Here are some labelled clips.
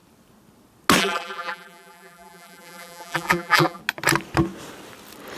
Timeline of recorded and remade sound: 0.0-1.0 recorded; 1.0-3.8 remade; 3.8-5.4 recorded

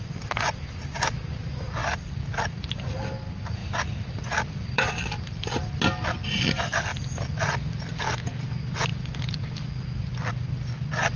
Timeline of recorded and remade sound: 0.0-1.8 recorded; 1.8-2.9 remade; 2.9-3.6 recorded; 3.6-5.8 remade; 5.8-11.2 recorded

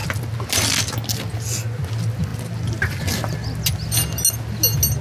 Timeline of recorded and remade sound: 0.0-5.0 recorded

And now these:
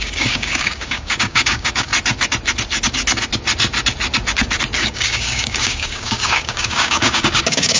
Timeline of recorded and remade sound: 0.0-1.9 remade; 1.9-4.8 recorded; 4.8-7.8 remade